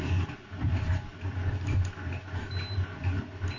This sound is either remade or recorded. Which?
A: recorded